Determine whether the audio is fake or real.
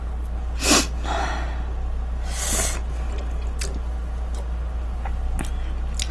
real